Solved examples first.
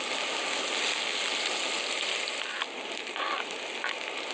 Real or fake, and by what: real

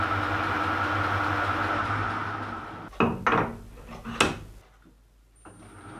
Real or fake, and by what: real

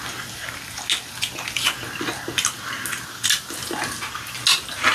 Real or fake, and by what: real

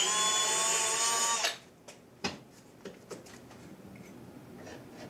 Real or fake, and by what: real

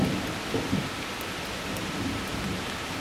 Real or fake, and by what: real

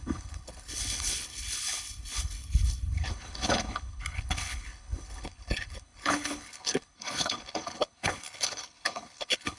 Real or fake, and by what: fake, codec, HILCodec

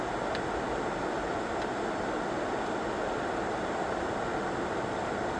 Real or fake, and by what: real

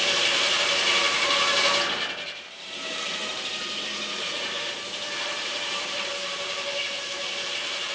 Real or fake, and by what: fake, vocoder, BigVGAN v2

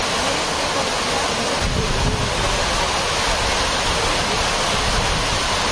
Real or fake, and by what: real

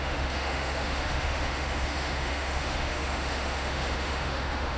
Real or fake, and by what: fake, autoencoder, DAC-VAE